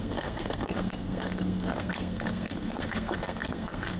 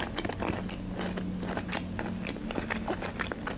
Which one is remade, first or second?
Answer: first